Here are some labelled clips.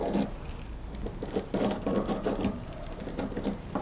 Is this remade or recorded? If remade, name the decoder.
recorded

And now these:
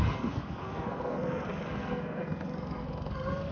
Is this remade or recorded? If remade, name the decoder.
remade, codec, SNAC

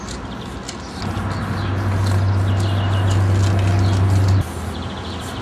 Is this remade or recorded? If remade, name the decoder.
recorded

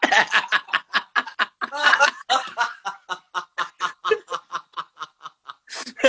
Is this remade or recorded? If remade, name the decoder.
recorded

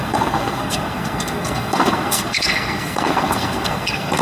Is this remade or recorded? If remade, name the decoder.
remade, codec, SNAC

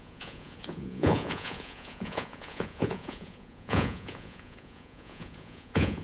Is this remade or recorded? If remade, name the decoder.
remade, vocoder, Vocos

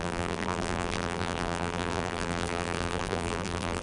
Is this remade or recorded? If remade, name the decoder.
remade, vocoder, BigVGAN v2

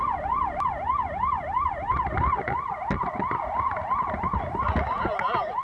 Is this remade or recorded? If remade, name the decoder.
recorded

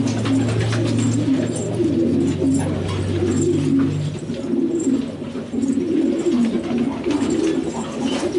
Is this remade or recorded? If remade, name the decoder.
recorded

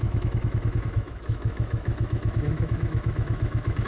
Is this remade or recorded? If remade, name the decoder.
remade, autoencoder, DAC-VAE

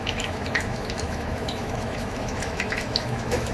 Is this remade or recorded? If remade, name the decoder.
remade, autoencoder, DAC-VAE